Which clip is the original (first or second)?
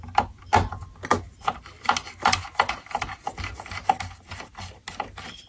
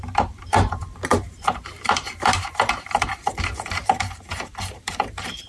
first